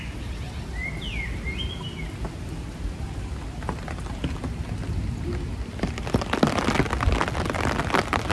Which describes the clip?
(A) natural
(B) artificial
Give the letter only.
A